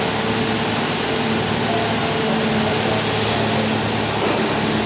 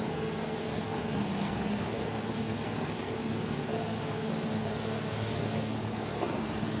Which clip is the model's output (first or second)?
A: second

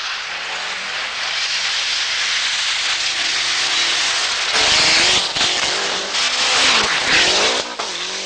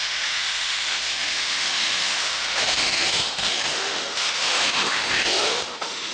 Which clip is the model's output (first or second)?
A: second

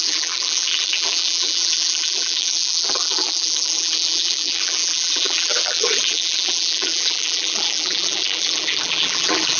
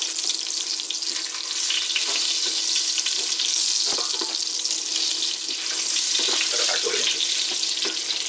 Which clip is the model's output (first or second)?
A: first